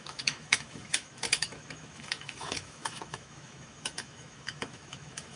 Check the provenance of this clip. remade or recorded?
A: remade